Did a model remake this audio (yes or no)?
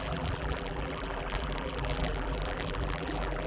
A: yes